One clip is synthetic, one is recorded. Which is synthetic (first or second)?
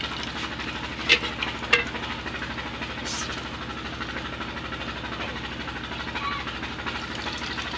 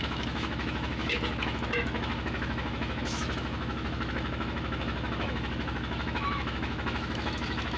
second